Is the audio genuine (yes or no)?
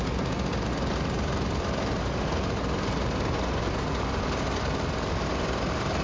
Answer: yes